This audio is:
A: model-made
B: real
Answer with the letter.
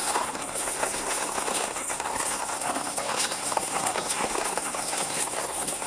A